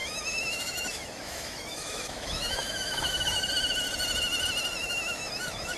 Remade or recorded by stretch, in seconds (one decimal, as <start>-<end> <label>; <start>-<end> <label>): 0.0-3.5 remade; 3.5-4.8 recorded; 4.8-5.8 remade